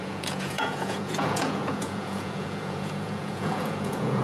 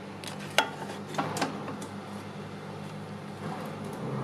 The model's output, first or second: first